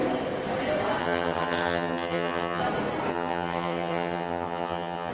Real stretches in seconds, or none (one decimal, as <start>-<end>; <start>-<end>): 0.0-1.0; 2.6-3.1